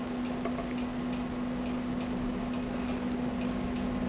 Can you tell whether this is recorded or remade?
recorded